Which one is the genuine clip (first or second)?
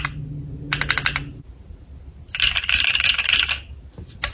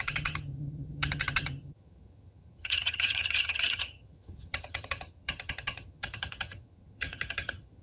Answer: first